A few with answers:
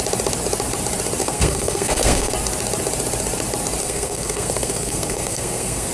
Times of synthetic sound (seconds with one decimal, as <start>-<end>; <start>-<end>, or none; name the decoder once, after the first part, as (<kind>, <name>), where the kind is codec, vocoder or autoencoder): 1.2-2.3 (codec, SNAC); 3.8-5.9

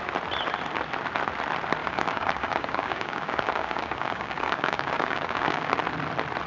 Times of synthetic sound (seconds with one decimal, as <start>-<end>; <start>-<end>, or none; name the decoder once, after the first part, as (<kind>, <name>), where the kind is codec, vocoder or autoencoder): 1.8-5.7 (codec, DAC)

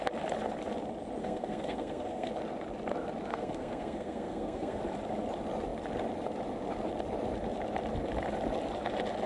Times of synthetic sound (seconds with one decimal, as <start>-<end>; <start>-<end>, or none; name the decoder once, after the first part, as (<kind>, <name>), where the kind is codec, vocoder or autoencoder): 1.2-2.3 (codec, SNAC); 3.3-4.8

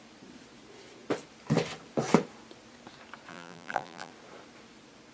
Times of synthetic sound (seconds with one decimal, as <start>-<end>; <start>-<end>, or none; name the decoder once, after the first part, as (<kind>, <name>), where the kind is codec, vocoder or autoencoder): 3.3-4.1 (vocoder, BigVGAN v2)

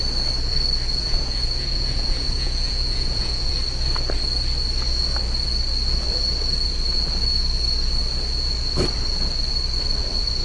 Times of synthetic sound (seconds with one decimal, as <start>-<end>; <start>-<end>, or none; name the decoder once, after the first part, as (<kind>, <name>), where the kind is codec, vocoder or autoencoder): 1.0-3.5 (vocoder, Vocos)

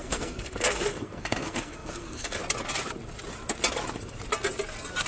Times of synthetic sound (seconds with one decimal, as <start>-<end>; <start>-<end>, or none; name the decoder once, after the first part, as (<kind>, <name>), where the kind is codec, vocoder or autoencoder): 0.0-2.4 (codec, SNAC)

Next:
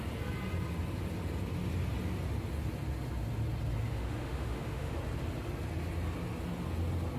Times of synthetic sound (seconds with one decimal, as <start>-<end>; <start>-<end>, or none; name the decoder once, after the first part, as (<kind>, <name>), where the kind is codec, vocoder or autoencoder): 3.9-4.9 (autoencoder, DAC-VAE)

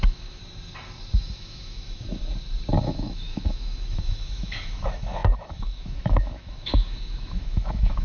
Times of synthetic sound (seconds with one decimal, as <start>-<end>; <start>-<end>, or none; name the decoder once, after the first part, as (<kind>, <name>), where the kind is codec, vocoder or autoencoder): 0.0-0.4 (autoencoder, DAC-VAE); 1.2-2.2; 2.8-8.0